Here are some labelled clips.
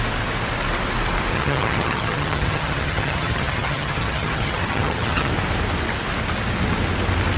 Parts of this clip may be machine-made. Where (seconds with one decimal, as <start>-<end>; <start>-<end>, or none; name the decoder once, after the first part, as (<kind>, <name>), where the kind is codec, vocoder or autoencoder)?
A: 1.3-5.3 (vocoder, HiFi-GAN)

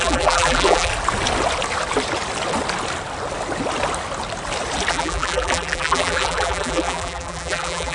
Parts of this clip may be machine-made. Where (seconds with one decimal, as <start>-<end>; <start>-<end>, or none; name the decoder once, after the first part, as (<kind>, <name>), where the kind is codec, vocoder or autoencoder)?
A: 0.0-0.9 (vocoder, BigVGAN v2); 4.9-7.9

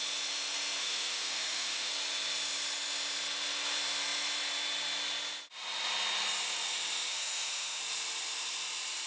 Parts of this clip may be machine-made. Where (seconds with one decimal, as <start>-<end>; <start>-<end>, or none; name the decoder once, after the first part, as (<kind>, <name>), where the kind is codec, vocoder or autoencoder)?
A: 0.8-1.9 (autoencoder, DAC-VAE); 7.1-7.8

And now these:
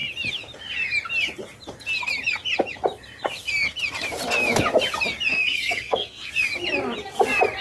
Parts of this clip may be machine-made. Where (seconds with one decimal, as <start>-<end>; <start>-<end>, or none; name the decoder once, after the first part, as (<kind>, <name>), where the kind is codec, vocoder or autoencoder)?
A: 5.3-6.3 (codec, SNAC)

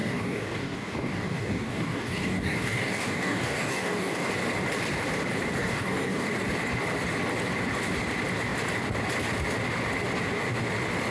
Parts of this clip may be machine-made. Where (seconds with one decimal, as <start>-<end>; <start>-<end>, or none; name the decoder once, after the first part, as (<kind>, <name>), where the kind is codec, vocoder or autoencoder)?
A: 0.0-4.3 (codec, DAC); 5.6-6.3